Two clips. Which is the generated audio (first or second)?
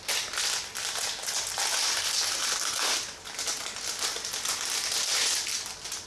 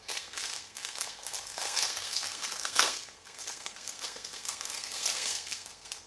second